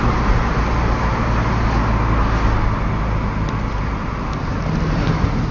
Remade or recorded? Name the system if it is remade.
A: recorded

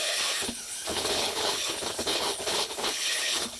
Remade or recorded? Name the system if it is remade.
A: remade, codec, HILCodec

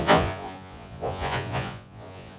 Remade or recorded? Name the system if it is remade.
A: remade, vocoder, Vocos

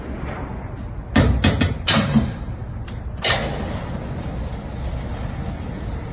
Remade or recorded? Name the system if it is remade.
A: recorded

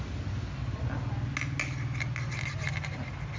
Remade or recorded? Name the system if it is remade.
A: recorded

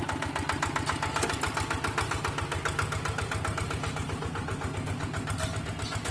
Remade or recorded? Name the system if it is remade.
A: recorded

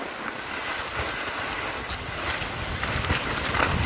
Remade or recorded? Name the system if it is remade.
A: recorded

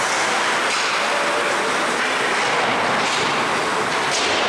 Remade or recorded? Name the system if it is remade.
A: recorded